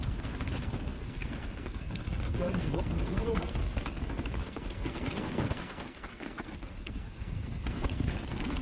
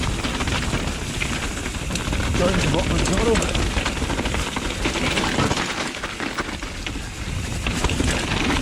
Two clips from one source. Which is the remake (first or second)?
first